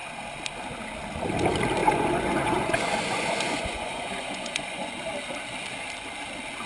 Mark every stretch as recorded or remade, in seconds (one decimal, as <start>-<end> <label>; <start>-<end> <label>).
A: 0.0-1.8 recorded; 1.8-4.9 remade; 4.9-6.7 recorded